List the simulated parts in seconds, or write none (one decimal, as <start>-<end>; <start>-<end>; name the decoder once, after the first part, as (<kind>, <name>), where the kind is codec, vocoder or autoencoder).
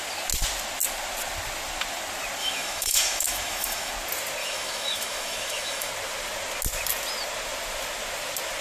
2.4-3.9 (autoencoder, DAC-VAE); 4.4-5.9